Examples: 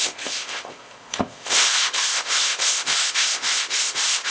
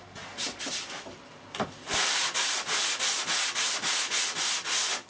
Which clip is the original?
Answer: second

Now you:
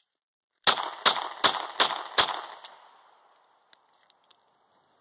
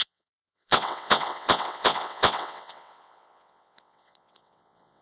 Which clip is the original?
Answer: first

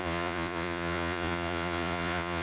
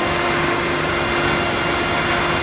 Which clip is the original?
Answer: second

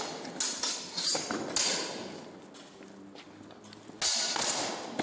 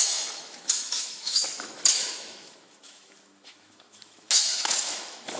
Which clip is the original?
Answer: first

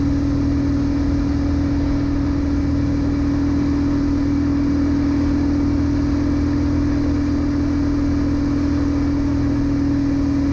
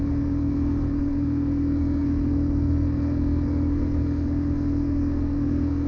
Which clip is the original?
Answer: first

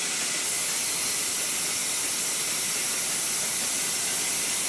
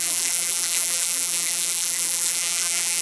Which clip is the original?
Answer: first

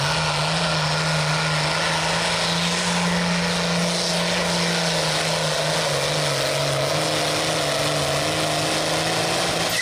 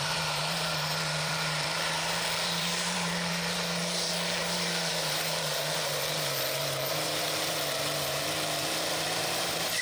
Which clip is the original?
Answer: first